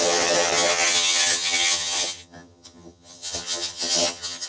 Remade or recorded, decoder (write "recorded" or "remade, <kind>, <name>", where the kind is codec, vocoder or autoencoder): remade, vocoder, HiFi-GAN